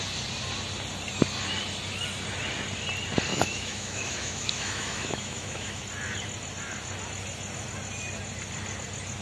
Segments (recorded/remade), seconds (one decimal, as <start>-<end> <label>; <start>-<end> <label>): 0.0-3.3 recorded; 3.3-5.8 remade; 5.8-9.2 recorded